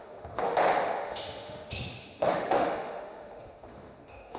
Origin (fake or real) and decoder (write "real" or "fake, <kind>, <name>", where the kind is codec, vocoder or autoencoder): fake, autoencoder, DAC-VAE